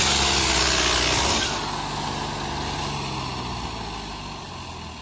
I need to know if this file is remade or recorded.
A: recorded